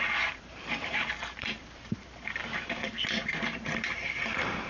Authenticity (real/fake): fake